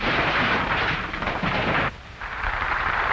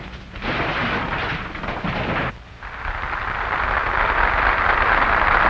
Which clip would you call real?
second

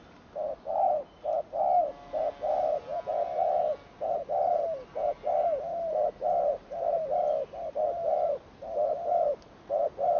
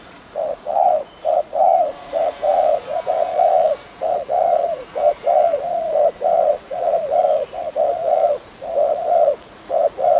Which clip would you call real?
first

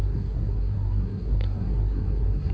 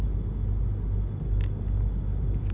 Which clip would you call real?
second